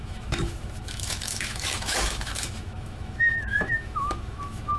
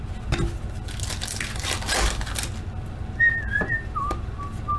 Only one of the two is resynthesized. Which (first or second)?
first